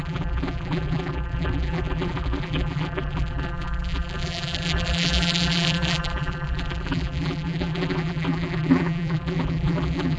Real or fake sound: fake